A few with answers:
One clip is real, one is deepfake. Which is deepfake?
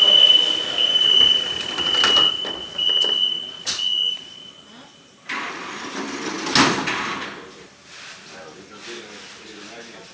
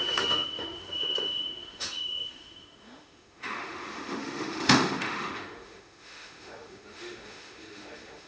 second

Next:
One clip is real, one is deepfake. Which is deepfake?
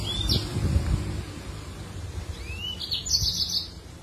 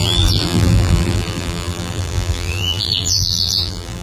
second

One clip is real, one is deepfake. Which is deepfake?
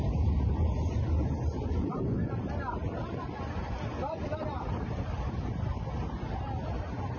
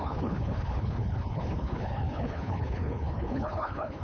second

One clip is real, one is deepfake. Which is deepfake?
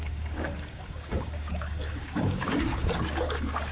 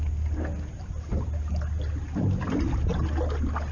first